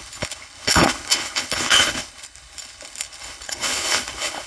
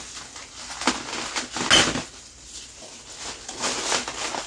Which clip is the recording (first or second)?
second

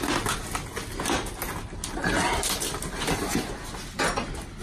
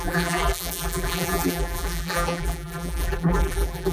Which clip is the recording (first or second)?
first